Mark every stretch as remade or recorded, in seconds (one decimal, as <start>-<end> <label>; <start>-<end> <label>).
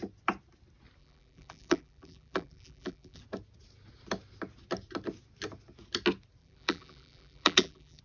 0.0-1.0 recorded; 1.0-3.2 remade; 3.2-6.4 recorded; 6.4-8.0 remade